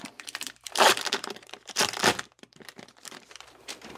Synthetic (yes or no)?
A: yes